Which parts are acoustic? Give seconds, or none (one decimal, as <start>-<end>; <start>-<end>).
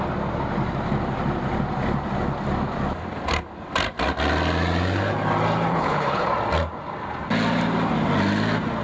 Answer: 0.0-5.7; 6.3-8.8